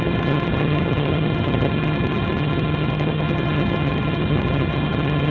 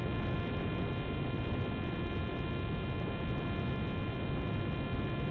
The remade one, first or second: first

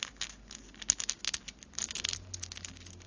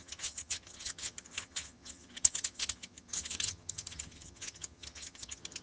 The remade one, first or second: second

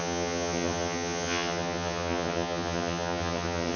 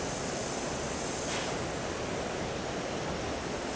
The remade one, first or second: first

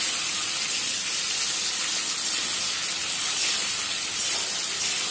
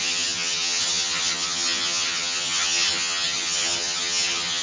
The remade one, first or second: second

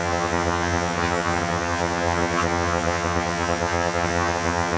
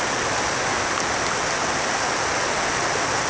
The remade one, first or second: first